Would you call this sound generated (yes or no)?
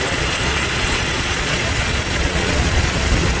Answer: yes